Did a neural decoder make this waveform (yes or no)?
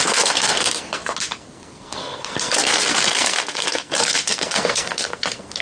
yes